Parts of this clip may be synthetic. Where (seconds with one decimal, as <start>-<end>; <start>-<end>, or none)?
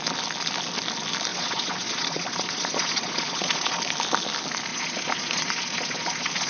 1.3-3.8; 4.7-6.5